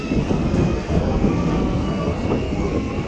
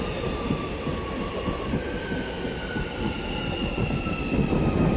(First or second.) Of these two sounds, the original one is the second